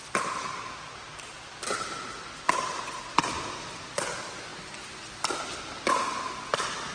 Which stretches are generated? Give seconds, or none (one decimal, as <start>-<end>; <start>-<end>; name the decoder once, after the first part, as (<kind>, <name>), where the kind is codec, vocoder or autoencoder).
none

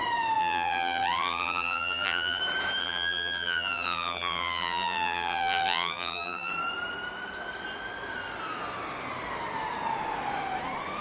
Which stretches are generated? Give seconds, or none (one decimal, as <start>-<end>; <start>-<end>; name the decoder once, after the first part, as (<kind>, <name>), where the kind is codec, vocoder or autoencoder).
0.4-2.4 (vocoder, BigVGAN v2); 2.8-6.5

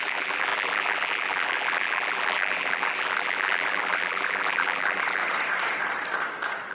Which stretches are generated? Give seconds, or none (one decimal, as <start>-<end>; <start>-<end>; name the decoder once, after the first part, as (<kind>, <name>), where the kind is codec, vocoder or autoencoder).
0.0-5.2 (vocoder, BigVGAN v2)

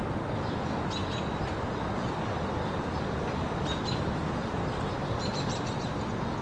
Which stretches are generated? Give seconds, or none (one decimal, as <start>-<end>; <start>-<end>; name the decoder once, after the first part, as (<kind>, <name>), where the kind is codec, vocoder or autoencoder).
1.0-4.0 (vocoder, BigVGAN v2); 4.4-5.6

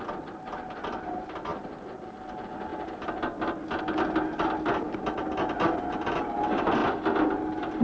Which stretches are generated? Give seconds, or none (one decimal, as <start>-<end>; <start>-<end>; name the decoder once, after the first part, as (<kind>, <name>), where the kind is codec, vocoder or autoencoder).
none

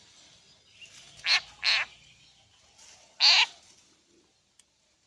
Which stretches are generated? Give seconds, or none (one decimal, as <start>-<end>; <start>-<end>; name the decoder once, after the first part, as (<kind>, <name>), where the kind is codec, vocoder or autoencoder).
none

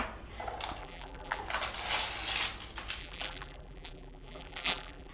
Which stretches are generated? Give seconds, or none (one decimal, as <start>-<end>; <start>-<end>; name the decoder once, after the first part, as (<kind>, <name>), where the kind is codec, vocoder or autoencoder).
0.8-1.4 (vocoder, BigVGAN v2); 3.0-5.1

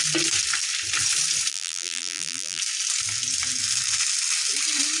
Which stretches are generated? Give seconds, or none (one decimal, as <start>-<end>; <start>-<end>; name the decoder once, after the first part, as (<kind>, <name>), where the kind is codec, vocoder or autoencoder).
1.5-2.6 (vocoder, BigVGAN v2)